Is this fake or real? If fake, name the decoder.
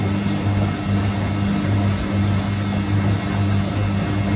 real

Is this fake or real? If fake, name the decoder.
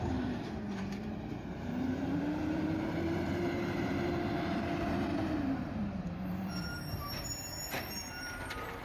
fake, vocoder, BigVGAN v2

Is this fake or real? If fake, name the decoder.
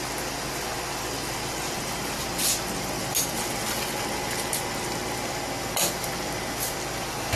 real